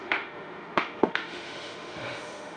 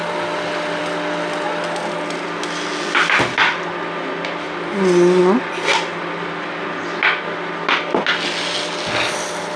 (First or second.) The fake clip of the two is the first